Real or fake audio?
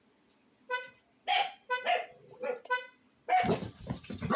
real